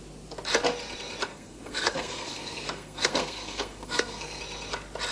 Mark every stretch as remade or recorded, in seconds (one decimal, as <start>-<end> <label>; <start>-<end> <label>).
0.0-1.3 recorded; 1.3-4.4 remade; 4.4-5.1 recorded